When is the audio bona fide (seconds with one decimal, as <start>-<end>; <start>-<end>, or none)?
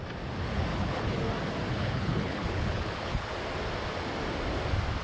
0.0-0.7; 1.2-1.7; 3.3-5.0